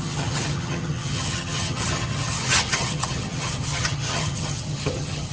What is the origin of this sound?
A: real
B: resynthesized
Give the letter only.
B